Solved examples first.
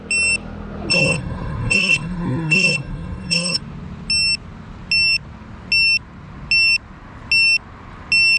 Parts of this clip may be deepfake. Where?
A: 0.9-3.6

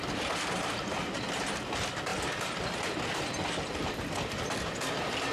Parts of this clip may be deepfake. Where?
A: none

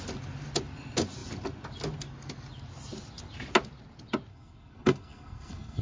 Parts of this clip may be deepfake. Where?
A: 4.3-5.8

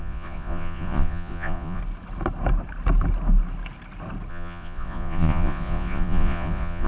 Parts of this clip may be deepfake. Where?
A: 0.0-1.8; 4.3-6.9

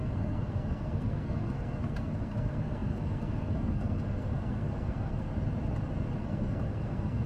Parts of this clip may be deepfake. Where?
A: 0.0-5.3; 6.2-7.3